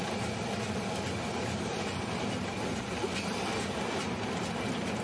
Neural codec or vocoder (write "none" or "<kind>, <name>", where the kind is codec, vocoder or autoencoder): none